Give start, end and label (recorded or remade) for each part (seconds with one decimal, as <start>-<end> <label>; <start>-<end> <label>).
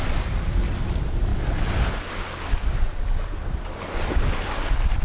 0.0-5.0 recorded